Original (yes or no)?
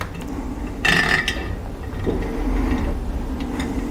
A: yes